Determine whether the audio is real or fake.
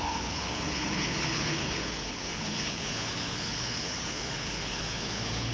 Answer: fake